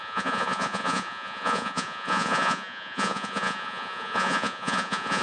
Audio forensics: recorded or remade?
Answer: remade